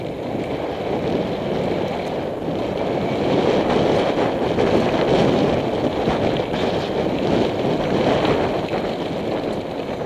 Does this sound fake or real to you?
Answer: real